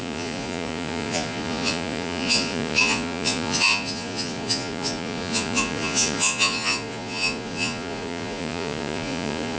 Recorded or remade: remade